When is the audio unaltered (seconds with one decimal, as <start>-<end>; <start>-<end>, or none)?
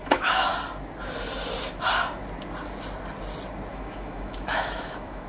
0.5-3.7